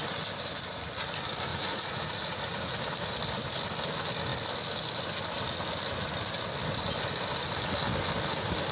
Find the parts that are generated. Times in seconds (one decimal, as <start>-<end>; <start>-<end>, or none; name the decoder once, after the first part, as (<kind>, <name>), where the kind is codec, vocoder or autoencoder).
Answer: 1.5-2.7 (vocoder, Vocos)